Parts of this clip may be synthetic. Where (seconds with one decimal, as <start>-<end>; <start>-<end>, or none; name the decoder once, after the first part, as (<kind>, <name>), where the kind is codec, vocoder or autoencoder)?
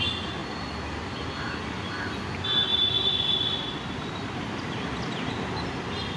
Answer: none